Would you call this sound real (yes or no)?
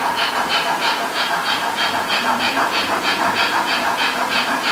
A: no